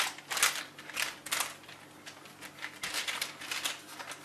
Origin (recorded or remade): recorded